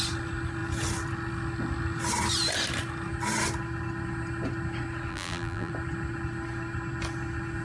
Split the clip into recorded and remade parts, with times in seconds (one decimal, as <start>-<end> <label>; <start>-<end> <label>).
0.0-5.1 recorded; 5.1-5.7 remade; 5.7-7.6 recorded